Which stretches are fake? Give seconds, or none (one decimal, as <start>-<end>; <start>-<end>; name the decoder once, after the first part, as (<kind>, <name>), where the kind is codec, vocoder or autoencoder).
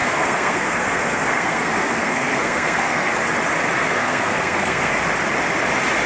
0.0-3.1 (codec, SNAC); 3.8-4.9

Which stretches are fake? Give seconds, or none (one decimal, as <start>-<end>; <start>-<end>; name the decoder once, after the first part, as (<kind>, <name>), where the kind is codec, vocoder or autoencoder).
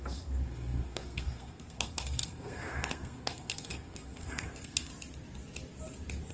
0.0-4.9 (codec, SNAC)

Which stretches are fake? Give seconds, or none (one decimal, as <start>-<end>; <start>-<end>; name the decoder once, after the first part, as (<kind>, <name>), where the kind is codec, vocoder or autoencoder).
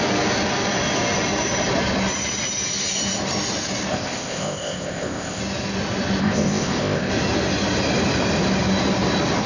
3.9-5.4 (codec, ZipCodec); 6.2-7.1